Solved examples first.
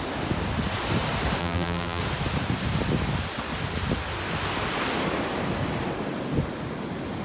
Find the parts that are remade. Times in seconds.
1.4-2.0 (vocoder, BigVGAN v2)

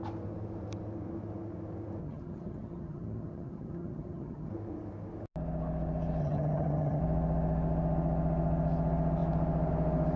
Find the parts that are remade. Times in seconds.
2.0-4.5 (vocoder, HiFi-GAN); 6.2-7.0

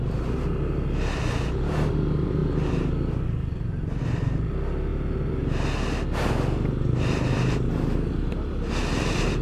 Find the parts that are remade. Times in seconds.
none

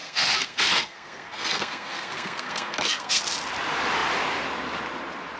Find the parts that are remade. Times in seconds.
0.0-3.2 (codec, SNAC)

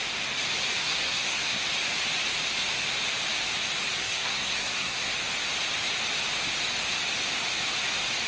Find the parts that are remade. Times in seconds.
0.8-1.6 (codec, SNAC); 4.0-5.1

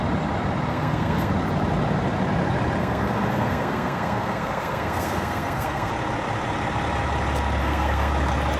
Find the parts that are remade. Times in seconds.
0.7-1.3 (codec, SNAC); 2.8-5.9; 7.6-8.1

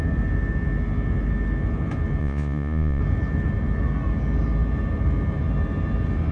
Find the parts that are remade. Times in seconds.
2.2-3.0 (vocoder, Vocos)

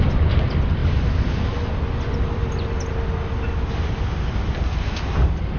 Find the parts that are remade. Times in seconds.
none